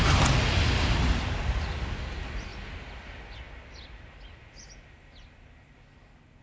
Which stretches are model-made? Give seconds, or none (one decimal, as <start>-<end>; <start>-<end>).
none